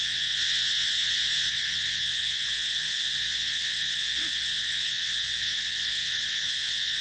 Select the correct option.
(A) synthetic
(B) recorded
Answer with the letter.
A